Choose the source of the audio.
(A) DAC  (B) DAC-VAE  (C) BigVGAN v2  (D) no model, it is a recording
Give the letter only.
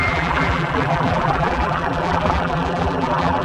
C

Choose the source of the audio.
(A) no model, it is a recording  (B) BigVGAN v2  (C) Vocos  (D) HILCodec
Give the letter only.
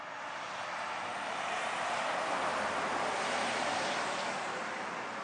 A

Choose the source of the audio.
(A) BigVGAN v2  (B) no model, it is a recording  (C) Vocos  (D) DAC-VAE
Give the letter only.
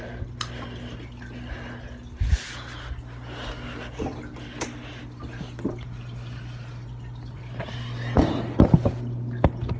B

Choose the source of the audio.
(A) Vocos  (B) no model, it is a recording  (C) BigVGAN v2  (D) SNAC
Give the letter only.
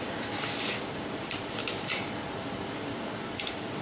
C